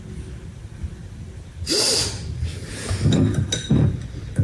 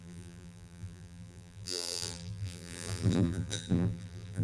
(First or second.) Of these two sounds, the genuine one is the first